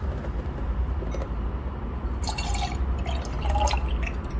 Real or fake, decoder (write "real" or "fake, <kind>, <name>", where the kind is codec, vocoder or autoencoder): real